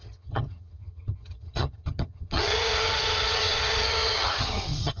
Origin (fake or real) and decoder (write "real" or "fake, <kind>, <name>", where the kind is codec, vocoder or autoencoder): fake, vocoder, HiFi-GAN